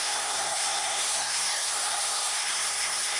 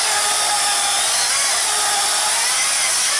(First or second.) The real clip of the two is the second